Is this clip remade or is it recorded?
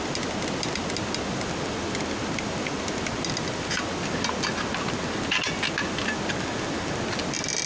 recorded